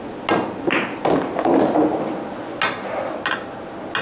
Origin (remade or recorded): recorded